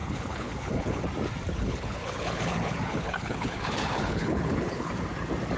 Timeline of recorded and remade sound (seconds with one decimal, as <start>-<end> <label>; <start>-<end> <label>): 0.0-1.0 remade; 1.0-1.5 recorded; 1.5-4.9 remade; 4.9-5.6 recorded